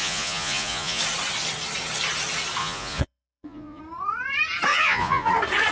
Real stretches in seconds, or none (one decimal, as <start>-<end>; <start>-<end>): 1.0-2.6; 3.8-4.7; 5.3-5.7